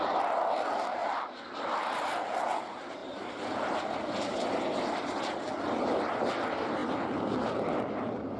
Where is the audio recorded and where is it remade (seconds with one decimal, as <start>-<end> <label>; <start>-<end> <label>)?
0.0-1.0 remade; 1.0-1.9 recorded; 1.9-3.0 remade; 3.0-6.0 recorded; 6.0-6.8 remade; 6.8-8.4 recorded